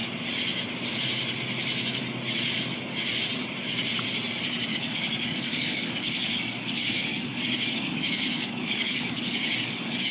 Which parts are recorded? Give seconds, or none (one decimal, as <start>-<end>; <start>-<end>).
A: 0.0-4.7